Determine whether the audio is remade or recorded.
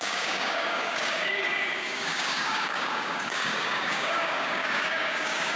remade